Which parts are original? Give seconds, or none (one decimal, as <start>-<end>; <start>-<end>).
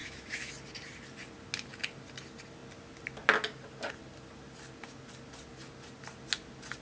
0.5-6.8